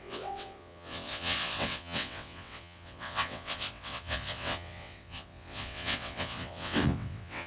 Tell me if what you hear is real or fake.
fake